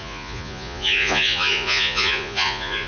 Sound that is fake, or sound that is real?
fake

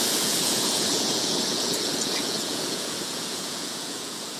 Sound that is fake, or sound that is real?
fake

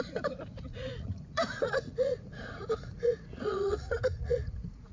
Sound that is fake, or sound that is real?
fake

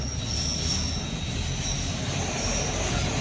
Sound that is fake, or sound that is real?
real